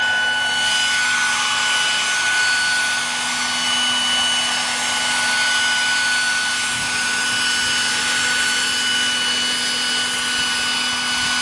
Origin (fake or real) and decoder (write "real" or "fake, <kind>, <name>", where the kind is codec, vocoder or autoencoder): real